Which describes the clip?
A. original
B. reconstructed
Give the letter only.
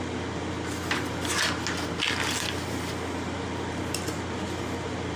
A